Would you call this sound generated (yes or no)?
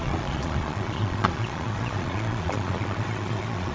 yes